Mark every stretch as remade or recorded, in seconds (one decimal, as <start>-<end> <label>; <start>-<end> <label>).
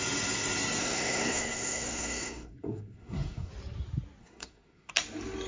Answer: 0.0-0.8 recorded; 0.8-3.5 remade; 3.5-4.2 recorded; 4.2-4.9 remade; 4.9-5.5 recorded